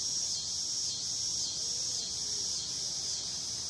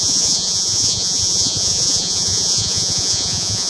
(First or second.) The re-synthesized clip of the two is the second